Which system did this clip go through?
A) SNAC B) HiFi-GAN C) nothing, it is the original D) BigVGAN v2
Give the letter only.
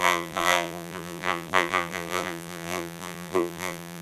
D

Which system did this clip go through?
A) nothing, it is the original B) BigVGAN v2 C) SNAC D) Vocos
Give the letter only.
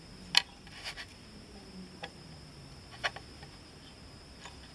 A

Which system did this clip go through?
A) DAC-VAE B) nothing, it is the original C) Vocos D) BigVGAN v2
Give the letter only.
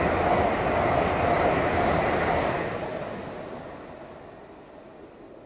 B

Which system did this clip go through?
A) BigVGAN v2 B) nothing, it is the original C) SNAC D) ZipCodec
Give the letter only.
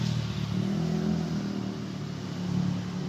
B